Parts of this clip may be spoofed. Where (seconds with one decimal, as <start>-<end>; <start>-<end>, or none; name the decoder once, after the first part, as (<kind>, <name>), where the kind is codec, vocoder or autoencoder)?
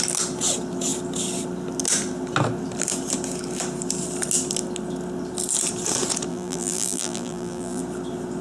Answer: 6.3-7.8 (vocoder, BigVGAN v2)